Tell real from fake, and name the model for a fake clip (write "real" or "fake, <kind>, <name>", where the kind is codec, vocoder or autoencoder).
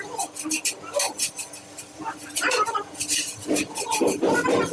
real